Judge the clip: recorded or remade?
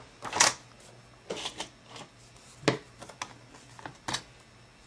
recorded